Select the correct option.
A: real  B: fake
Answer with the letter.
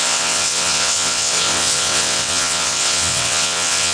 B